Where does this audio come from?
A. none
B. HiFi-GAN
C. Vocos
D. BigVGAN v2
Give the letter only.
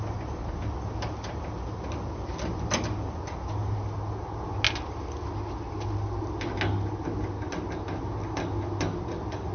A